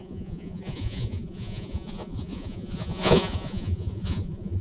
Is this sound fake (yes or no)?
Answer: yes